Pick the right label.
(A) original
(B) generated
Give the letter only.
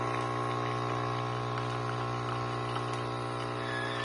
A